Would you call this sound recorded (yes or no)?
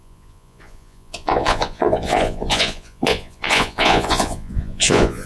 no